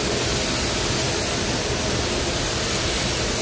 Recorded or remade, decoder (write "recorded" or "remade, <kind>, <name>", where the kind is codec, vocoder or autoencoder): recorded